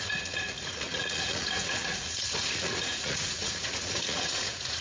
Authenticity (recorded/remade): remade